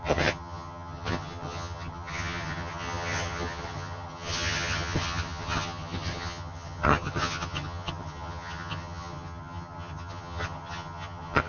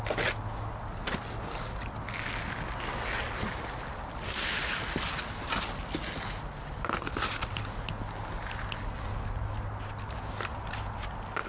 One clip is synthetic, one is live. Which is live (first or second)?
second